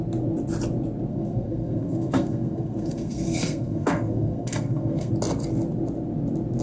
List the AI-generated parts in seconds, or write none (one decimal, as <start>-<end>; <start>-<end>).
1.1-5.1